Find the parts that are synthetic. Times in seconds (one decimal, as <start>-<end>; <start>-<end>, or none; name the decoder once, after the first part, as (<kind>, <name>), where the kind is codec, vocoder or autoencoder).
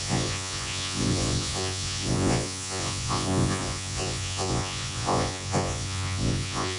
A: 0.0-6.8 (vocoder, Vocos)